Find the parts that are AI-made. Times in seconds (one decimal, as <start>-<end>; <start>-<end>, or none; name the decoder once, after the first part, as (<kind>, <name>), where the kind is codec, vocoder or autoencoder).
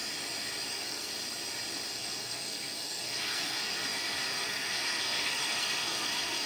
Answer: 0.7-1.1 (codec, SNAC); 1.9-6.5